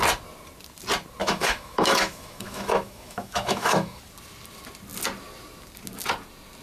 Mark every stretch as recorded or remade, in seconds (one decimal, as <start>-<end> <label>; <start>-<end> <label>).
0.0-1.2 recorded; 1.2-4.0 remade; 4.0-6.6 recorded